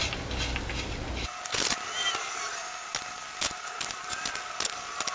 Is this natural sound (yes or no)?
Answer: yes